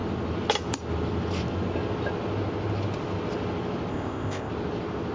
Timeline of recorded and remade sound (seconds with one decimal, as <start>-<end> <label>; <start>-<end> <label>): 0.0-3.9 recorded; 3.9-4.5 remade; 4.5-5.1 recorded